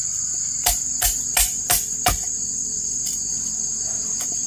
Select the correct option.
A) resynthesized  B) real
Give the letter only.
B